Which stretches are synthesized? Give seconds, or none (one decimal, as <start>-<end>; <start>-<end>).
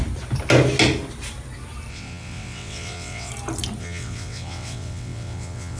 1.9-3.3; 3.8-5.8